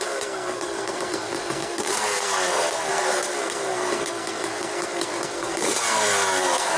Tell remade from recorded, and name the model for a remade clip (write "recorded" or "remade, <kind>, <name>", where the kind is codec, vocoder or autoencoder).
remade, codec, SNAC